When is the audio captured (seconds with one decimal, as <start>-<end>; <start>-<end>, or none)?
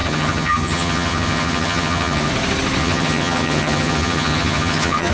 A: 2.3-2.8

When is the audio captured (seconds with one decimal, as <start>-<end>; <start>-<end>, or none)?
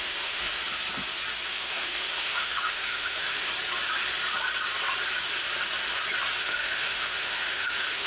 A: 0.6-1.5; 3.5-6.4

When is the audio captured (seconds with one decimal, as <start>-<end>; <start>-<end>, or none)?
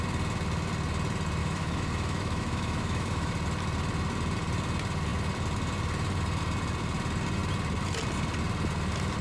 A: 0.0-1.4; 3.3-9.2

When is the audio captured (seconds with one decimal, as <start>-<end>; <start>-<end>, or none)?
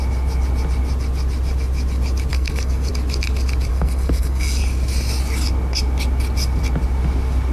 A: 0.0-2.3; 2.9-3.7; 4.6-7.5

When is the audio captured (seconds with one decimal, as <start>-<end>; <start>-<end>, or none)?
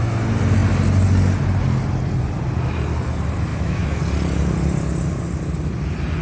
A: 0.0-3.5; 4.0-6.2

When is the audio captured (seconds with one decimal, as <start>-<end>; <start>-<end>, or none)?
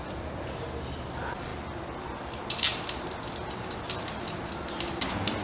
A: 0.0-5.4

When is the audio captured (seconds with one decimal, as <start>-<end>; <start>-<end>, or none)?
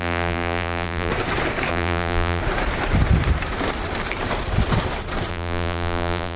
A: 1.1-1.7; 2.4-5.3